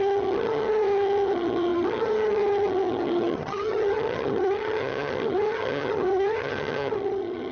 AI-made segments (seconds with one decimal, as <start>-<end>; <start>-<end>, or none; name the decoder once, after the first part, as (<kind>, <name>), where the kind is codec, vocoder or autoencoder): 0.0-7.5 (vocoder, HiFi-GAN)